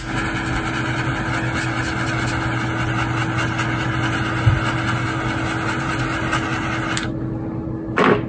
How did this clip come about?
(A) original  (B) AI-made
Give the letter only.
A